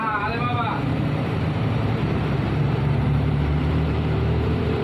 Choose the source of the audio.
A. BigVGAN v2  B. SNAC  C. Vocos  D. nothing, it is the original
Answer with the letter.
A